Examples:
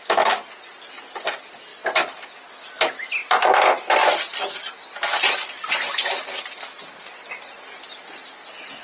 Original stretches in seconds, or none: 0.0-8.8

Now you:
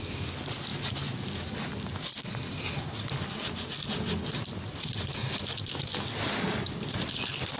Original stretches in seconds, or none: 0.0-7.6